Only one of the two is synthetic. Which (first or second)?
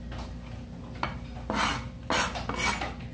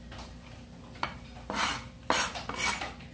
second